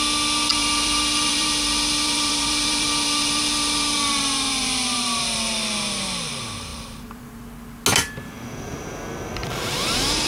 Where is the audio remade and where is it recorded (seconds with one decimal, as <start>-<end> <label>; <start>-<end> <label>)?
0.0-0.6 recorded; 0.6-5.5 remade; 5.5-6.7 recorded; 6.7-7.4 remade; 7.4-9.4 recorded; 9.4-10.3 remade